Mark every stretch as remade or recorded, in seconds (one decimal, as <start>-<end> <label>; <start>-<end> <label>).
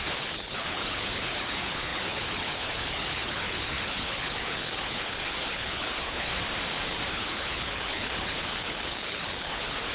0.0-6.3 remade; 6.3-7.1 recorded; 7.1-9.9 remade